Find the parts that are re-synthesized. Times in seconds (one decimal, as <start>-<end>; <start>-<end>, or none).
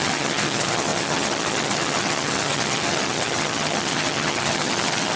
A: 0.0-5.2